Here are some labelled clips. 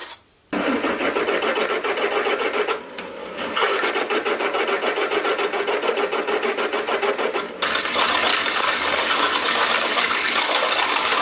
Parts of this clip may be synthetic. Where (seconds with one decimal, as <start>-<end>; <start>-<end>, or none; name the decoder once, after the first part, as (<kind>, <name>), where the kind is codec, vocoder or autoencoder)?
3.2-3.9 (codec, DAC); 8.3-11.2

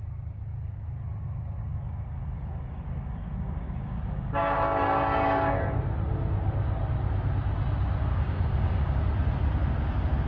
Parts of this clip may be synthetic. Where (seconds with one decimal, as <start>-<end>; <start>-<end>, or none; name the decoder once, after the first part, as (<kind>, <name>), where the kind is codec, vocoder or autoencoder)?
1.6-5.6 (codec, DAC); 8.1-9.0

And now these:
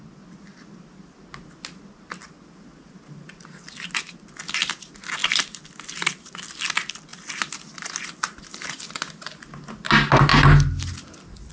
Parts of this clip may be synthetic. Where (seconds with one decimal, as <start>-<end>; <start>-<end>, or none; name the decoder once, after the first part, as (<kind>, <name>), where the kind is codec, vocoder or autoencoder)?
none